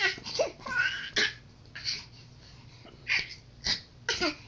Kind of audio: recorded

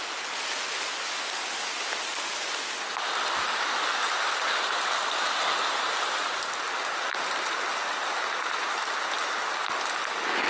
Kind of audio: recorded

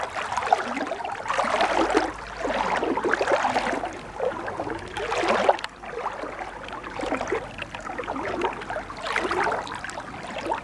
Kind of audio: recorded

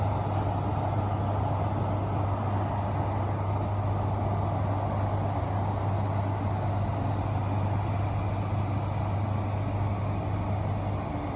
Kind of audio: recorded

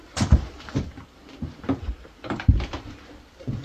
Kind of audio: recorded